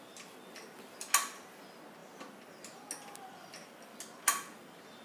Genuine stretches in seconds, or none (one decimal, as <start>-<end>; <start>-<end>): 0.0-5.0